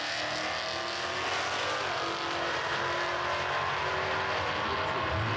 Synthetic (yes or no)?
no